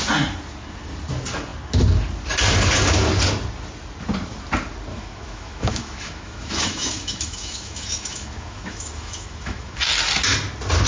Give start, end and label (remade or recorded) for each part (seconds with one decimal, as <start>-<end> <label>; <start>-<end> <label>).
0.0-4.9 recorded; 4.9-9.8 remade; 9.8-10.9 recorded